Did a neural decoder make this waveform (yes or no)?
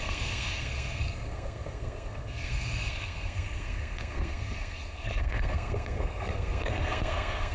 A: yes